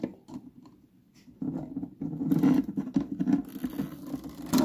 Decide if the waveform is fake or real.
real